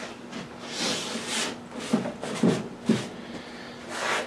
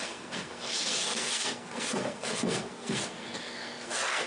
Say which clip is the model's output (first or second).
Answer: second